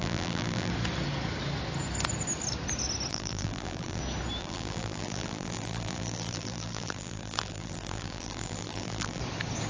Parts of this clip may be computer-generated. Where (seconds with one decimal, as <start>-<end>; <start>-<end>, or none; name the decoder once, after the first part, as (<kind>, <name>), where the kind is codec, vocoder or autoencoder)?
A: 0.0-0.7 (vocoder, BigVGAN v2); 3.1-4.0; 4.4-9.2